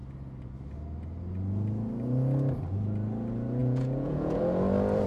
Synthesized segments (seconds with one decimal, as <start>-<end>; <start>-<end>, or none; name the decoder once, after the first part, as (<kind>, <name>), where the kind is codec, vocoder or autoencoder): 3.6-4.4 (vocoder, Vocos)